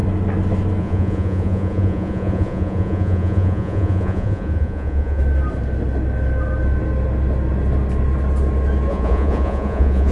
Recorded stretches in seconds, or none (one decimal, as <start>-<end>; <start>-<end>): 0.0-0.8; 5.2-8.9